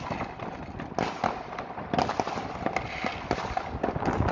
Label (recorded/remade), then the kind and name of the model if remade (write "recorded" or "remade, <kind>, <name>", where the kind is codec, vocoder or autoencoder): recorded